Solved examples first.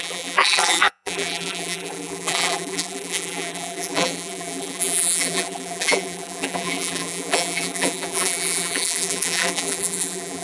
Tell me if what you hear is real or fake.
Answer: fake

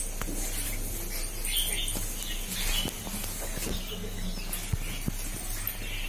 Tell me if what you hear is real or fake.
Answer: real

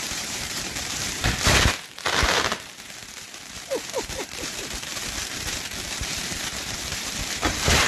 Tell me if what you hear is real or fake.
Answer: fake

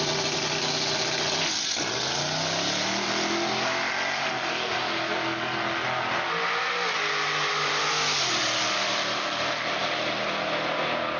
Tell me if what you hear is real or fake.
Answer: real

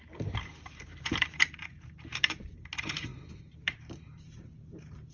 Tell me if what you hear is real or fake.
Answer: fake